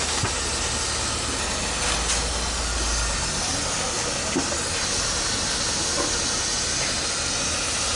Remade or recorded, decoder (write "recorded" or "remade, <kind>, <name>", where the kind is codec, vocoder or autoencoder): recorded